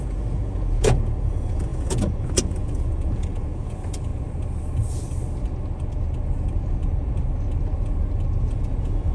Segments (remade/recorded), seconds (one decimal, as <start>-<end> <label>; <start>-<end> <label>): 0.0-4.1 remade; 4.1-8.4 recorded; 8.4-9.1 remade